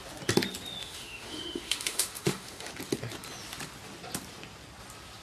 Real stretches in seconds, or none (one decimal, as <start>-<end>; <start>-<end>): 0.0-0.8; 2.7-5.2